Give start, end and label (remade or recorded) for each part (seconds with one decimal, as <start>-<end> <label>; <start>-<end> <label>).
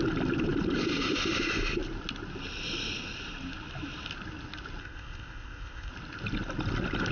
0.0-4.8 recorded; 4.8-5.9 remade; 5.9-7.1 recorded